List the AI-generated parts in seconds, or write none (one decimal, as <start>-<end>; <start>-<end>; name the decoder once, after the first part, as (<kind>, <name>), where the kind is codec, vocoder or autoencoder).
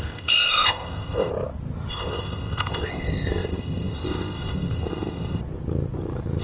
0.0-1.3 (codec, ZipCodec); 1.9-5.4